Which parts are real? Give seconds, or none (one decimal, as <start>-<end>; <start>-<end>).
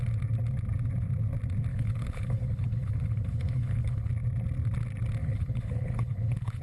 0.0-1.7; 4.1-5.2